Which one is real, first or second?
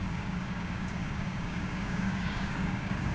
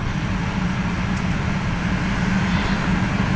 second